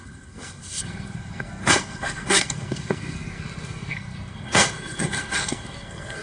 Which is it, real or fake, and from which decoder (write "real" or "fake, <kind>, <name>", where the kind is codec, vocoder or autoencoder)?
fake, codec, SNAC